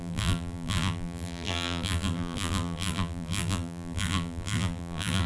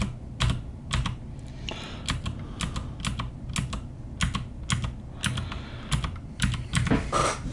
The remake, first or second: first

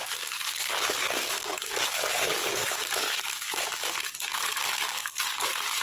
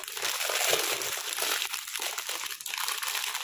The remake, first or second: first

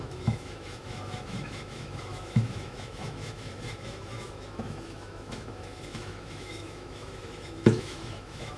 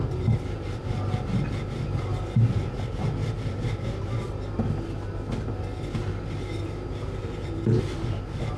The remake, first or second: first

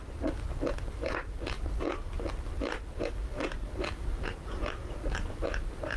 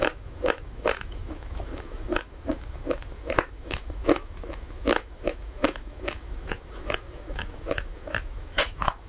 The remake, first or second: second